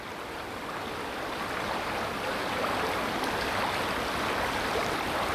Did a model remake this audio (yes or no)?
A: no